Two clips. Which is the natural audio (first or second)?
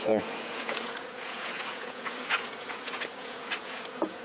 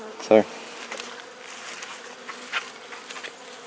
second